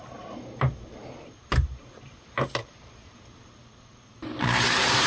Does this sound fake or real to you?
fake